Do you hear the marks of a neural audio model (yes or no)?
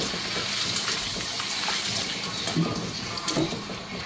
no